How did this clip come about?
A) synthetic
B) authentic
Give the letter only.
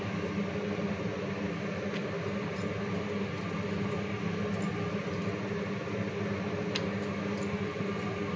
B